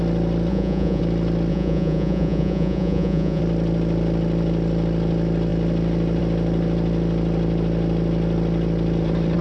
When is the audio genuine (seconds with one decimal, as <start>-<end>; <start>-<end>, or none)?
0.0-0.5; 1.0-1.5; 3.4-9.4